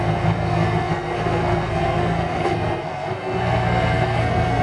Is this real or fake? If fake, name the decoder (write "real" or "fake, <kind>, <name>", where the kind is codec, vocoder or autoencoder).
fake, codec, SNAC